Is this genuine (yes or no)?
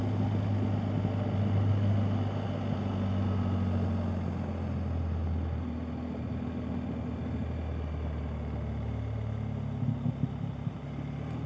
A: yes